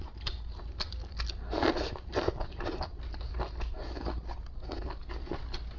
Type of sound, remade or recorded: recorded